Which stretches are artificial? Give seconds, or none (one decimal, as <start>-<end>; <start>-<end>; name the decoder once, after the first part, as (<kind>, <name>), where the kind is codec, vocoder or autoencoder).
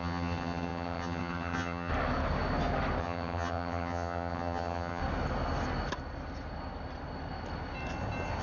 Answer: 0.0-1.9 (vocoder, HiFi-GAN); 3.0-5.0